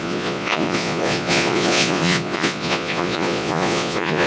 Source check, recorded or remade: remade